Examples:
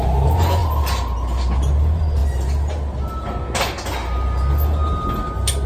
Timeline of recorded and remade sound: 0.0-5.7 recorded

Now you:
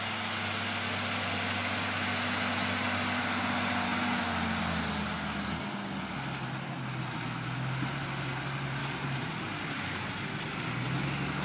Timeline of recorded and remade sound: 0.0-8.8 recorded; 8.8-10.2 remade; 10.2-11.4 recorded

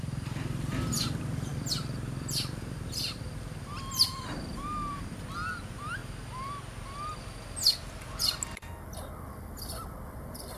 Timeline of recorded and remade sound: 0.0-6.0 remade; 6.0-9.3 recorded; 9.3-10.6 remade

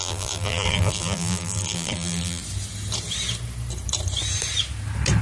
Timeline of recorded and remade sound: 0.0-2.4 remade; 2.4-5.2 recorded

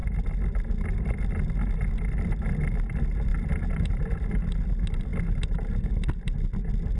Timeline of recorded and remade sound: 0.0-3.3 recorded; 3.3-4.3 remade; 4.3-5.1 recorded; 5.1-5.9 remade; 5.9-7.0 recorded